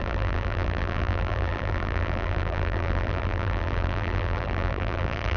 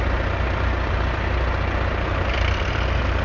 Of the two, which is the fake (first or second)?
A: first